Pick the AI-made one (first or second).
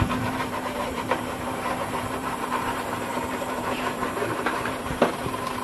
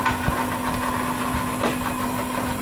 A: first